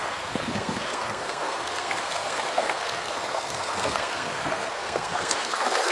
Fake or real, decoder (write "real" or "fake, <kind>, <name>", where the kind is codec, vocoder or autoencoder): fake, codec, SNAC